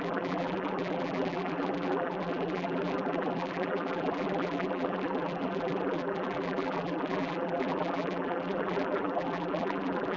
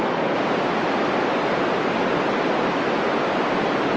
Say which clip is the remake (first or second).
first